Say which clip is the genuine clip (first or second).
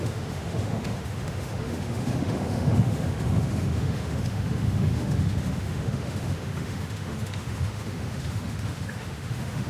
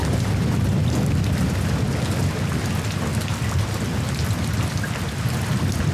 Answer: second